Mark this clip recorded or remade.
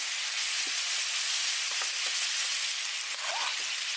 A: recorded